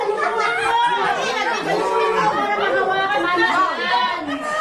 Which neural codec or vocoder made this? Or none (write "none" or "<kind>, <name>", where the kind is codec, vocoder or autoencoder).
none